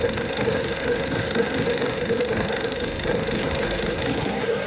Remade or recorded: remade